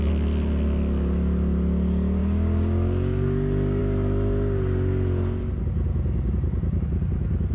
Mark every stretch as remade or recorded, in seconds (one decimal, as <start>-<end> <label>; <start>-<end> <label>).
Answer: 0.0-2.2 recorded; 2.2-3.8 remade; 3.8-7.5 recorded